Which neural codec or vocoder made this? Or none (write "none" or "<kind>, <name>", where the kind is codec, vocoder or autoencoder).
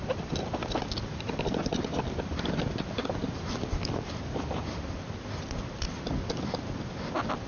vocoder, BigVGAN v2